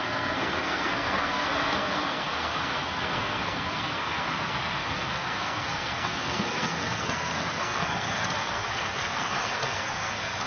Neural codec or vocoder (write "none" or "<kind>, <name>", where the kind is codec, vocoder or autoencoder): codec, SNAC